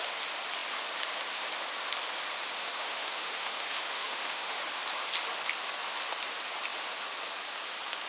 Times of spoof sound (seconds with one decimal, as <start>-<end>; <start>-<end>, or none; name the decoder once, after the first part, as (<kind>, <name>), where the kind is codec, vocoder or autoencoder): 2.6-4.6 (autoencoder, DAC-VAE)